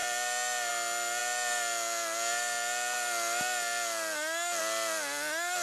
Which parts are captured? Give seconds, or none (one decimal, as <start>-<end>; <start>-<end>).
0.0-5.6